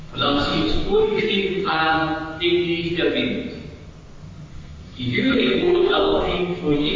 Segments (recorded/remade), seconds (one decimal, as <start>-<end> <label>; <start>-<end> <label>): 0.0-1.8 remade; 1.8-4.5 recorded; 4.5-7.0 remade